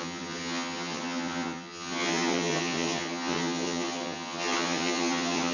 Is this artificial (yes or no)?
yes